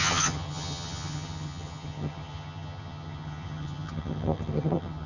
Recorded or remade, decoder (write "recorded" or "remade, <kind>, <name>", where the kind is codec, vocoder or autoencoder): remade, vocoder, HiFi-GAN